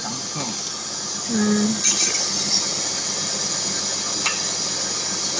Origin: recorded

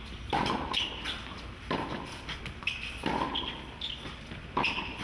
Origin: recorded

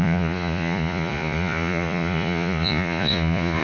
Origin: remade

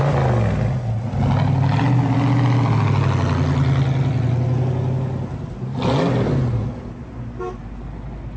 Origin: recorded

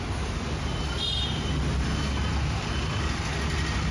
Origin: recorded